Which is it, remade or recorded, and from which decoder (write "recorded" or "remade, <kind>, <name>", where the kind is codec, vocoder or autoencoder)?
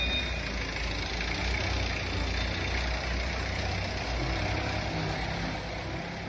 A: recorded